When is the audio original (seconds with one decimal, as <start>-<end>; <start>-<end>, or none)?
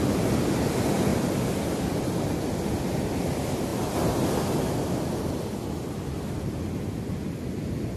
0.0-8.0